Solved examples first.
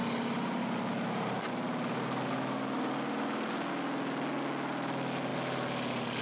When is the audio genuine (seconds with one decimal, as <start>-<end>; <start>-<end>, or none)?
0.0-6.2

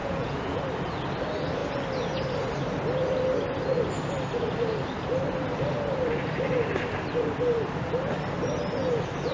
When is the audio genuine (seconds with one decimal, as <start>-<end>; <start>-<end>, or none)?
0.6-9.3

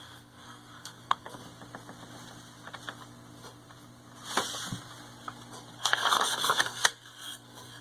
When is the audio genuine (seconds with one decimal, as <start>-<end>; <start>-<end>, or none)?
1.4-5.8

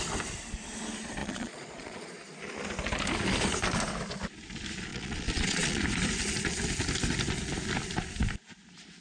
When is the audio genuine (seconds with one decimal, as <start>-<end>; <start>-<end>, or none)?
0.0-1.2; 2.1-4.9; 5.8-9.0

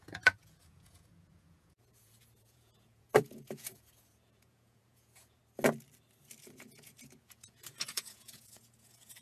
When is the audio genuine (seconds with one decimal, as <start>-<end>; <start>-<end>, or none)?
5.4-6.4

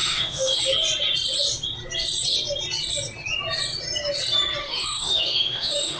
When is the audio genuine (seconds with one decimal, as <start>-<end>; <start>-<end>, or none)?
0.6-4.6

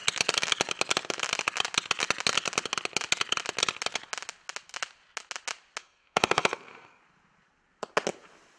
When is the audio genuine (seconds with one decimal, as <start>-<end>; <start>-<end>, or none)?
0.0-5.8; 7.0-8.6

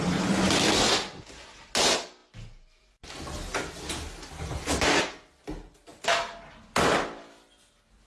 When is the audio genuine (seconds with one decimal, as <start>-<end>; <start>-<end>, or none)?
0.0-8.1